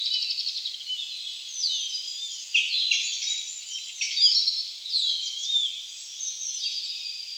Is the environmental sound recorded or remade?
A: recorded